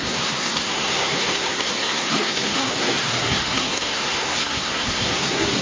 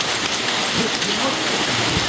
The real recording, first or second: second